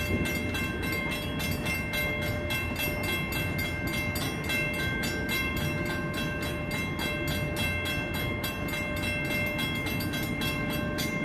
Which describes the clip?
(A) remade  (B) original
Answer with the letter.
B